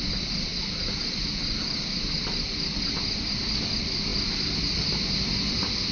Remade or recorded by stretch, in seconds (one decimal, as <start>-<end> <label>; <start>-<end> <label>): 0.0-5.9 recorded